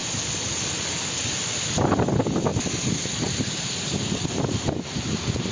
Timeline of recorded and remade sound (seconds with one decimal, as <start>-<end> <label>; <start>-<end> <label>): 0.0-5.5 recorded